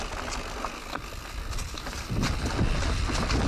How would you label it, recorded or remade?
recorded